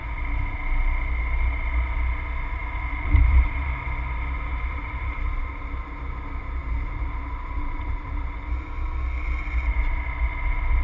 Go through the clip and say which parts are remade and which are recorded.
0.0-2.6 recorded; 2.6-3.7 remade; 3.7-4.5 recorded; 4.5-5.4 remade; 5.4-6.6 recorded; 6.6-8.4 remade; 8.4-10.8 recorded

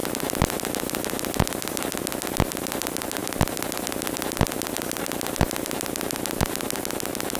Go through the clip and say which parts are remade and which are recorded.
0.0-7.4 recorded

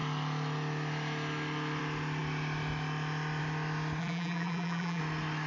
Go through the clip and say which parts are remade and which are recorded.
0.0-4.0 recorded; 4.0-5.0 remade; 5.0-5.5 recorded

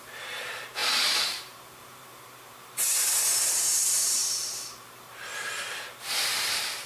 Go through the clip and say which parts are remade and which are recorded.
0.0-6.9 remade

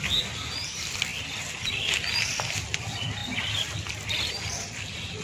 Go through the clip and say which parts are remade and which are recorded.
0.0-5.2 recorded

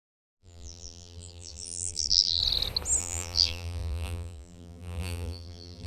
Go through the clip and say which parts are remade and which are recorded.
0.0-2.4 remade; 2.4-3.0 recorded; 3.0-5.9 remade

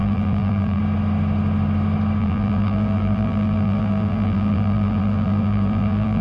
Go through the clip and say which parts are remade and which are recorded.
0.0-0.8 remade; 0.8-2.2 recorded; 2.2-6.2 remade

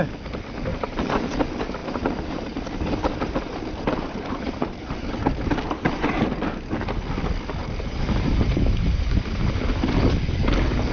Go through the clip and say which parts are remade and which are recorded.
0.0-0.7 recorded; 0.7-1.4 remade; 1.4-1.8 recorded; 1.8-6.3 remade; 6.3-7.6 recorded; 7.6-9.7 remade; 9.7-10.9 recorded